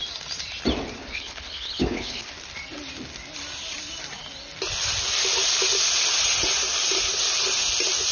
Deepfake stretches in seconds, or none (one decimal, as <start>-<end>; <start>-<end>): 1.0-2.3